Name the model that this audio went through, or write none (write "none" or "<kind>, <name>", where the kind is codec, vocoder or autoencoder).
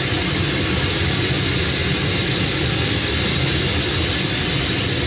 none